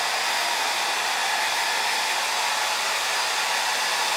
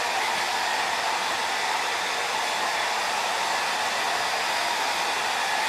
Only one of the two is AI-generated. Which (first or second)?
first